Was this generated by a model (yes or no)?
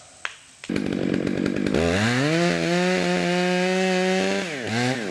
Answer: no